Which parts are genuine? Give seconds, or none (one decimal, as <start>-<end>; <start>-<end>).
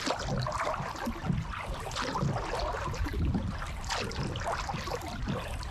0.0-3.0; 3.6-5.7